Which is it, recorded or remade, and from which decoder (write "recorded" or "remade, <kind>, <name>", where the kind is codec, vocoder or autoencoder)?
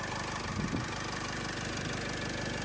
recorded